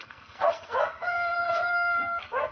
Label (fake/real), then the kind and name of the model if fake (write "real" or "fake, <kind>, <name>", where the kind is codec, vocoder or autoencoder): fake, codec, SNAC